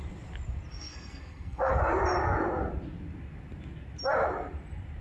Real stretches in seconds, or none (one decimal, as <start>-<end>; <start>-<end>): 0.0-0.7; 1.7-5.0